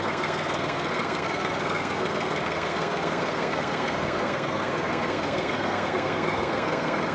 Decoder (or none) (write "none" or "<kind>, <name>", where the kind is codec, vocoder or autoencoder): codec, SNAC